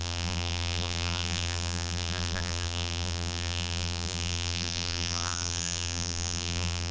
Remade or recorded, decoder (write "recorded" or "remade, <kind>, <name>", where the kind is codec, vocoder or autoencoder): remade, vocoder, BigVGAN v2